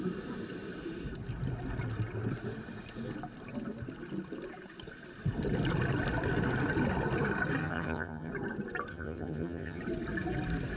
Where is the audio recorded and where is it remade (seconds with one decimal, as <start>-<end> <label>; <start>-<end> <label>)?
0.0-7.6 recorded; 7.6-8.3 remade; 8.3-8.9 recorded; 8.9-9.8 remade; 9.8-10.8 recorded